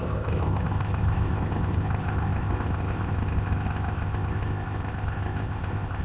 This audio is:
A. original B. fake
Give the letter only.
B